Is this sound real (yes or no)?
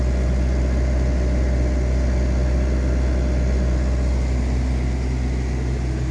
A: yes